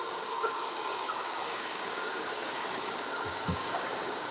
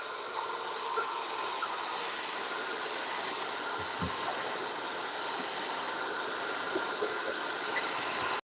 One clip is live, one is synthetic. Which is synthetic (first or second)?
first